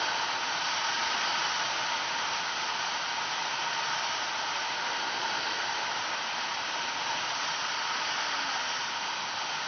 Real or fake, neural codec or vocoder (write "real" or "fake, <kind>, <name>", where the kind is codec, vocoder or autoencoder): real